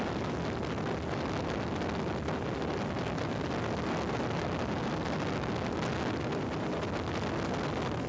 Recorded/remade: recorded